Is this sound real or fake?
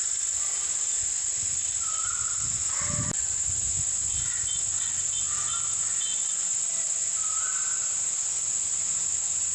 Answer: real